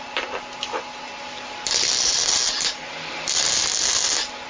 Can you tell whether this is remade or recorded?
recorded